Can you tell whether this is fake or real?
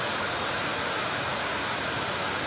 real